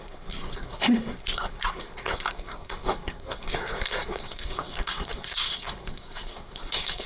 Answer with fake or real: fake